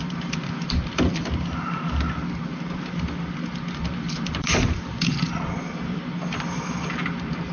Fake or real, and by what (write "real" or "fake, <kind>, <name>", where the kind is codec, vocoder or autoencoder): fake, vocoder, BigVGAN v2